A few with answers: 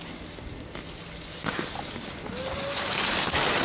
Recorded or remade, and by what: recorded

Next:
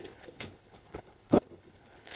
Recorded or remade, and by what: remade, codec, HILCodec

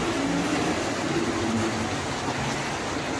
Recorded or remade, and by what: recorded